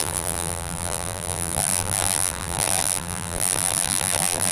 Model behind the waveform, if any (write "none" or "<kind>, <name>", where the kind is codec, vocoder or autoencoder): vocoder, BigVGAN v2